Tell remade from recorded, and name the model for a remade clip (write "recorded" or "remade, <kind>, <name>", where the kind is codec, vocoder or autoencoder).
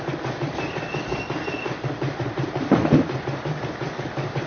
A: remade, vocoder, BigVGAN v2